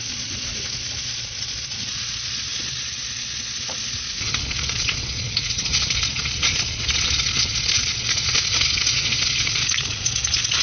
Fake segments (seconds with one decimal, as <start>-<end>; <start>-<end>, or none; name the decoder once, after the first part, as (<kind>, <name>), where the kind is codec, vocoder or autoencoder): 0.0-10.6 (vocoder, Vocos)